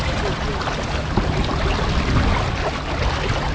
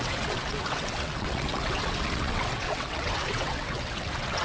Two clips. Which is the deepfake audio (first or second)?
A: second